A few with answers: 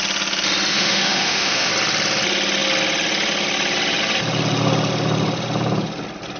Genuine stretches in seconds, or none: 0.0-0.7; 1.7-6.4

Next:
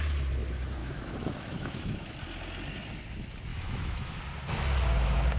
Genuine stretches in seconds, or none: 0.0-0.8; 2.2-3.5; 4.2-5.4

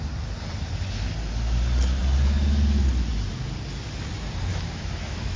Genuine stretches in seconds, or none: 0.0-4.5

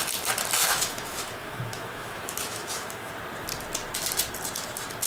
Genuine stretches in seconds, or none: 0.0-0.6; 3.1-5.1

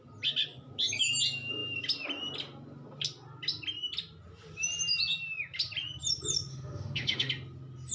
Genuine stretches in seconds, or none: 0.0-6.5; 7.3-7.9

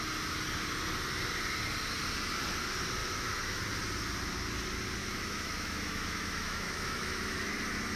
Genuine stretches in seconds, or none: 0.0-3.0; 3.6-5.0; 7.5-8.0

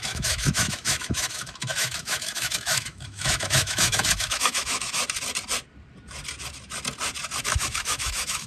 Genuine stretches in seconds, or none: 5.0-7.4